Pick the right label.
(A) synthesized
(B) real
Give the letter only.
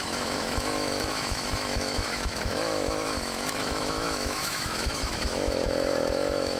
A